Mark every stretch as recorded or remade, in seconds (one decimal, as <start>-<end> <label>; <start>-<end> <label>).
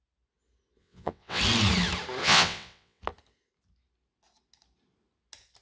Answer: 0.0-0.8 recorded; 0.8-1.4 remade; 1.4-2.2 recorded; 2.2-3.0 remade; 3.0-5.6 recorded